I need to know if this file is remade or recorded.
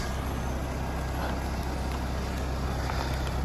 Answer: recorded